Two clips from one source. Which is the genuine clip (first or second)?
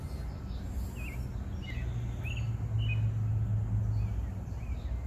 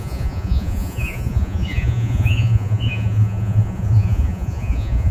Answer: first